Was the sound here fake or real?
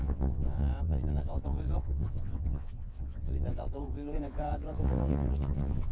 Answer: fake